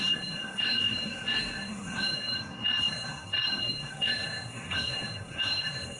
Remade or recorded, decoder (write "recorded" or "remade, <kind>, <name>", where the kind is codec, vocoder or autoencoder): remade, codec, SNAC